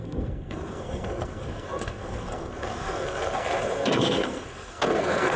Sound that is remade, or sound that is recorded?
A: remade